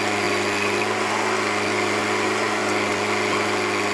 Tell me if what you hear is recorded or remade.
recorded